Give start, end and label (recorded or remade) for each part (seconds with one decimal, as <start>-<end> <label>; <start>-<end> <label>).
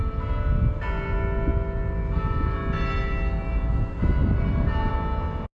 0.0-5.6 recorded